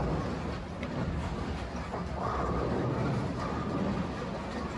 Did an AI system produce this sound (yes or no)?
no